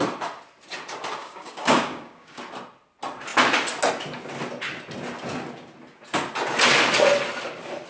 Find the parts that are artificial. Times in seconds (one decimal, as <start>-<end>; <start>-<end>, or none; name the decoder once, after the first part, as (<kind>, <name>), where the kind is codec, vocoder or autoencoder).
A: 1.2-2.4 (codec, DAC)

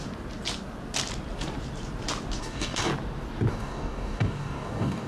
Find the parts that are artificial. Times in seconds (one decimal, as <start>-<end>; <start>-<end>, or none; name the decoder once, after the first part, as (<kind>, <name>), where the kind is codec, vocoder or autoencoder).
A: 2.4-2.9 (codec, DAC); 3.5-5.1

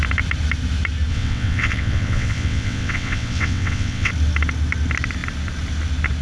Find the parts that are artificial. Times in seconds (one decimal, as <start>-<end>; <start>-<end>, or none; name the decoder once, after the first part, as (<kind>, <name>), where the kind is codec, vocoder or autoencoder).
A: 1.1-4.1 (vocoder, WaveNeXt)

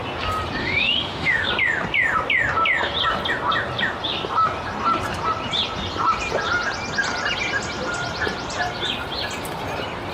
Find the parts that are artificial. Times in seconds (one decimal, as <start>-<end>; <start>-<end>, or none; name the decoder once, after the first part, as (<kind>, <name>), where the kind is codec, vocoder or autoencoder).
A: 0.6-1.5 (autoencoder, DAC-VAE)

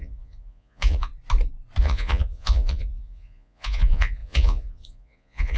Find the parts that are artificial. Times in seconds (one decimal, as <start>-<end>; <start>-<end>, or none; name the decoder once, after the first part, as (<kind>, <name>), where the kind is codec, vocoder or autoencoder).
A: 0.0-1.1 (vocoder, Vocos); 1.8-5.6

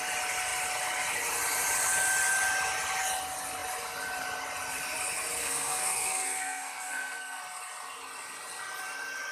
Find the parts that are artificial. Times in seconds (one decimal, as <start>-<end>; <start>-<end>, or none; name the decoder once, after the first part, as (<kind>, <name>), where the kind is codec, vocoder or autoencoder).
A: 5.4-7.4 (codec, SNAC)

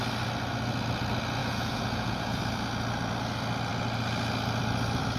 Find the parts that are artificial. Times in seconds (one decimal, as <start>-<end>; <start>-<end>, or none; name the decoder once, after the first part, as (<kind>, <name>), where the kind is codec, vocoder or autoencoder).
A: 1.4-2.4 (vocoder, Vocos)